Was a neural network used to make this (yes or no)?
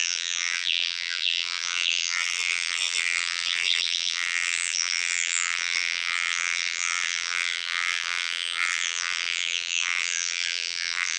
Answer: yes